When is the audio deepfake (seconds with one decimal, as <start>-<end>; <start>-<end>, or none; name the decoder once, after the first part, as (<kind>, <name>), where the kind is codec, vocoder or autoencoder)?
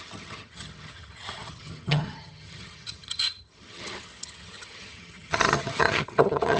0.0-6.6 (vocoder, HiFi-GAN)